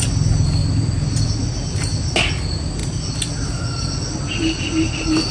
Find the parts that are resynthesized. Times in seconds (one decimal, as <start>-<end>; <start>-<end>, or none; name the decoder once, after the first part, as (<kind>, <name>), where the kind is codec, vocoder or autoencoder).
none